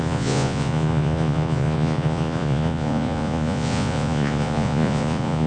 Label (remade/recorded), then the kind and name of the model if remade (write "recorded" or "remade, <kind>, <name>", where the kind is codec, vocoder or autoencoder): remade, vocoder, Vocos